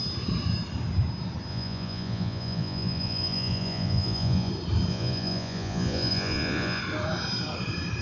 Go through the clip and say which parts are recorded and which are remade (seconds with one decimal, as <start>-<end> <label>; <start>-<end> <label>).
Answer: 0.0-1.5 recorded; 1.5-4.5 remade; 4.5-4.9 recorded; 4.9-6.8 remade; 6.8-8.0 recorded